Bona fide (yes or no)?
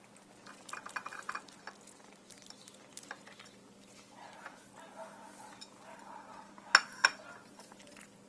yes